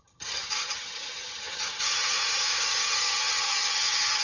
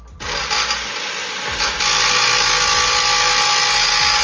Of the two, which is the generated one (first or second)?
first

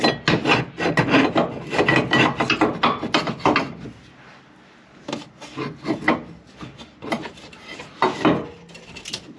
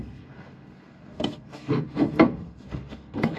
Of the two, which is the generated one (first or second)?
second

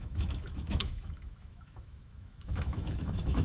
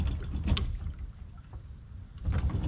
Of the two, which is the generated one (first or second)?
first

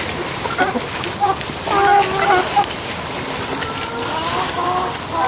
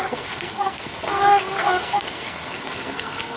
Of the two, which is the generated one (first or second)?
second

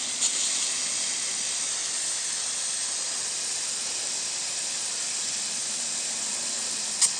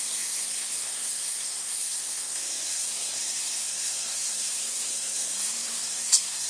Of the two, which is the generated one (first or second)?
second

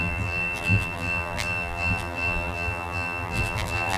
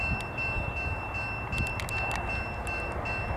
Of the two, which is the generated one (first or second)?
first